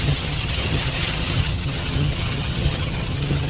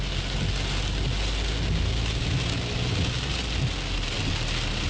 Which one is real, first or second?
second